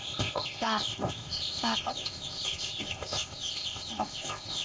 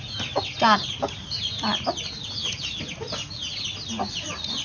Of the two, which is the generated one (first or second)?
first